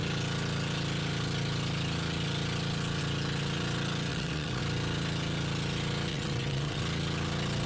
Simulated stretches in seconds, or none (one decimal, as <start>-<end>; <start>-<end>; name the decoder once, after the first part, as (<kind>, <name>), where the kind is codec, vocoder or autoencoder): 4.1-4.6 (vocoder, WaveNeXt); 6.1-6.8